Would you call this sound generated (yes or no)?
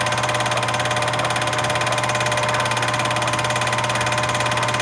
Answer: no